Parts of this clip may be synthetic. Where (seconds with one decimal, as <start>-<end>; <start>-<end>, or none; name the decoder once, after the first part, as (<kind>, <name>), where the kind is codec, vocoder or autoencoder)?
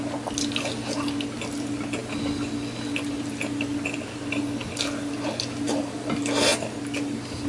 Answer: none